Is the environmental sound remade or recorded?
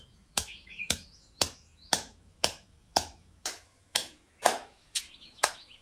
remade